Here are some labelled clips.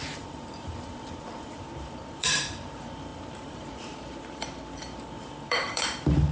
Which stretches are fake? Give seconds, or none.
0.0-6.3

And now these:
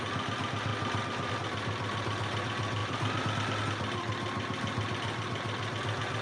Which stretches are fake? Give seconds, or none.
none

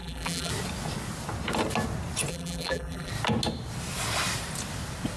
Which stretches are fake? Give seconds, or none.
0.0-0.5; 2.3-3.1